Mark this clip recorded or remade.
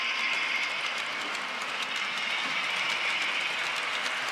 recorded